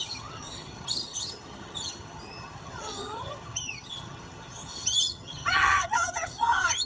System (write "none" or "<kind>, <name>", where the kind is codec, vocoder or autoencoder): vocoder, HiFi-GAN